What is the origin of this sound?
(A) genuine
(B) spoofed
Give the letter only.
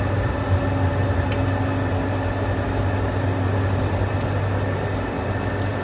A